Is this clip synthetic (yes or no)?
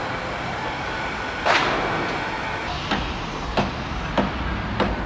no